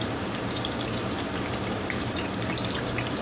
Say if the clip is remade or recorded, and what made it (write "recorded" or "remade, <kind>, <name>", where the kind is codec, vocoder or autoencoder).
remade, vocoder, BigVGAN v2